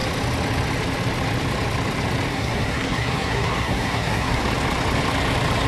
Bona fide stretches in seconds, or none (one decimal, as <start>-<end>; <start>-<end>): 0.0-2.3; 4.4-5.7